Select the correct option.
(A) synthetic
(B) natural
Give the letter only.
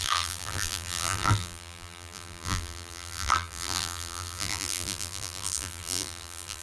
A